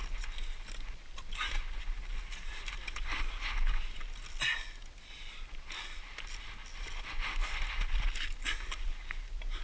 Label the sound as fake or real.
real